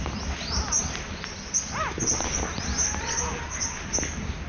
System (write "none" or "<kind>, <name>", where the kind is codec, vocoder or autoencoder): none